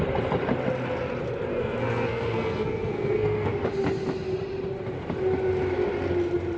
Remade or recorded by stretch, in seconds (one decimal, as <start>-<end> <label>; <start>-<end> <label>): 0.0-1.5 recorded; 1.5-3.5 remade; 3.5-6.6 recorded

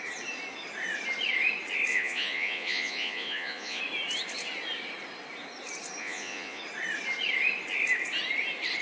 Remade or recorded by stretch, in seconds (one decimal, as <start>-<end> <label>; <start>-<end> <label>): 0.0-1.9 recorded; 1.9-3.8 remade; 3.8-6.0 recorded; 6.0-6.6 remade; 6.6-8.8 recorded

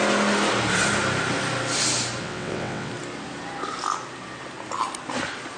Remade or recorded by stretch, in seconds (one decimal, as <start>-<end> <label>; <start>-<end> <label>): 0.0-2.2 recorded; 2.2-2.9 remade; 2.9-5.6 recorded

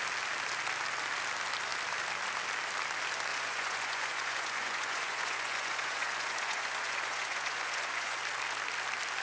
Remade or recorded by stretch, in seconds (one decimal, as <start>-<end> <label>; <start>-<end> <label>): 0.0-3.3 recorded; 3.3-8.2 remade; 8.2-9.2 recorded

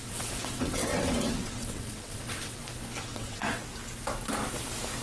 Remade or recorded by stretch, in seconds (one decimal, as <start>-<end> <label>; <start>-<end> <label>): 0.0-2.6 remade; 2.6-3.0 recorded; 3.0-3.6 remade; 3.6-5.0 recorded

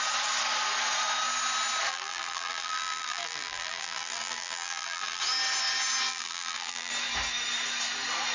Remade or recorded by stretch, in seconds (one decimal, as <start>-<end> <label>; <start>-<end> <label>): 0.0-1.9 recorded; 1.9-5.2 remade; 5.2-6.1 recorded; 6.1-6.9 remade; 6.9-8.3 recorded